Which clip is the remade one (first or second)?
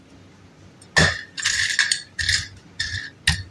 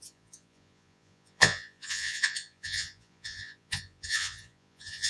second